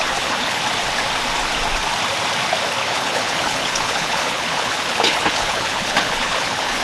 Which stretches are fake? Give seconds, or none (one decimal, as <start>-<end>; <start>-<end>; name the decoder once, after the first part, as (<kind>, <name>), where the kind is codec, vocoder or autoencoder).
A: 0.0-0.6 (codec, HILCodec); 2.8-6.8